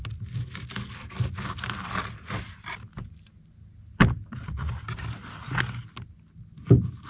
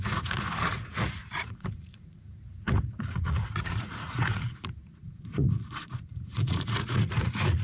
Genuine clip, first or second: first